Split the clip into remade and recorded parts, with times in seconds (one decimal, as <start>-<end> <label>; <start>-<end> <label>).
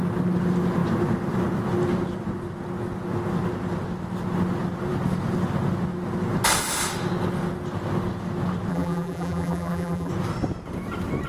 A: 0.0-8.7 recorded; 8.7-10.1 remade; 10.1-11.3 recorded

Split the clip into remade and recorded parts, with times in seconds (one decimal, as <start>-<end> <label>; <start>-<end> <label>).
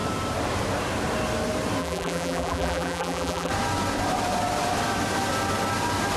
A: 0.0-1.8 recorded; 1.8-3.5 remade; 3.5-6.2 recorded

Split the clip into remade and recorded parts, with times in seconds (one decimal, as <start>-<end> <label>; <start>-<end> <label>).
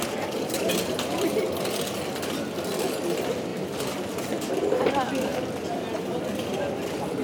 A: 0.0-3.5 recorded; 3.5-4.5 remade; 4.5-7.2 recorded